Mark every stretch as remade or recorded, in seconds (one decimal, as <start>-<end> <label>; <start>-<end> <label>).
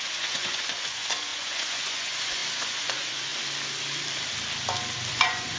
0.0-3.3 remade; 3.3-5.1 recorded; 5.1-5.6 remade